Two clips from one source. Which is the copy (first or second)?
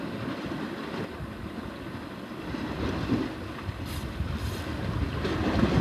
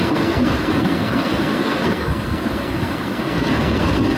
second